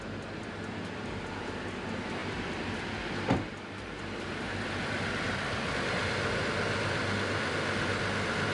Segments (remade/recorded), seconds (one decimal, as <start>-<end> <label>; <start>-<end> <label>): 0.0-2.2 recorded; 2.2-5.9 remade; 5.9-8.5 recorded

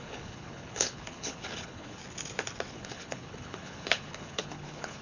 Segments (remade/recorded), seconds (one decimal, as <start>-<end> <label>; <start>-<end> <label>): 0.0-2.0 remade; 2.0-2.7 recorded; 2.7-5.0 remade

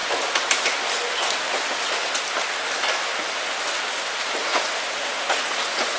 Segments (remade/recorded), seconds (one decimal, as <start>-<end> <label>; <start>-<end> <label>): 0.0-4.4 recorded; 4.4-6.0 remade